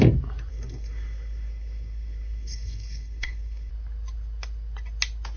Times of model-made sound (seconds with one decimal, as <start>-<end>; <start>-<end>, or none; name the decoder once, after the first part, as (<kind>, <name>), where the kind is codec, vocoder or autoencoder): 0.5-3.7 (codec, SNAC)